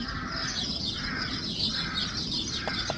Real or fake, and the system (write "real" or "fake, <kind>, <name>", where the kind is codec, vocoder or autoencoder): real